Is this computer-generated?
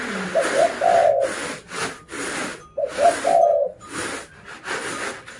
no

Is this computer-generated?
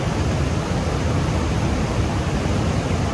no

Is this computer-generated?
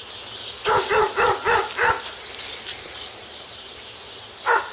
no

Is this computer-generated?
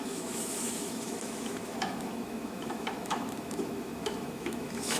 yes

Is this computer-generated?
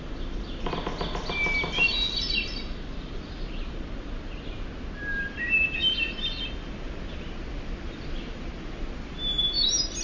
no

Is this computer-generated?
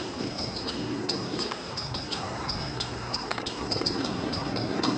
yes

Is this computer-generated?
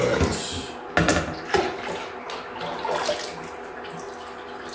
no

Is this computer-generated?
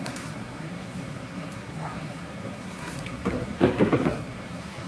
yes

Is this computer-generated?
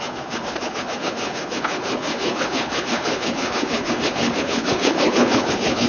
yes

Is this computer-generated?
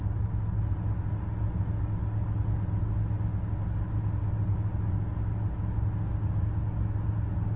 no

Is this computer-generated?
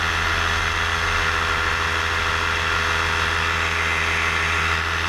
no